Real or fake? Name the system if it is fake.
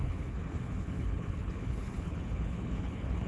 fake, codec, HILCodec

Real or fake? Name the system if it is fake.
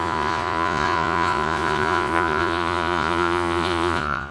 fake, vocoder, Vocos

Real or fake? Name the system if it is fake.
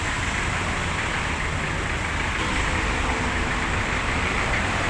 real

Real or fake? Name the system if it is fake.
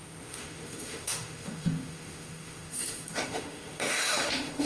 fake, autoencoder, DAC-VAE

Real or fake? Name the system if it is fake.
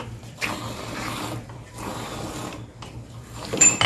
fake, vocoder, BigVGAN v2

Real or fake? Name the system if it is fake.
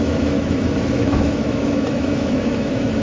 fake, autoencoder, DAC-VAE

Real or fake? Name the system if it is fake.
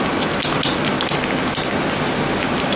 real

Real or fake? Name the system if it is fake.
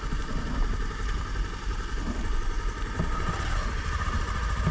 real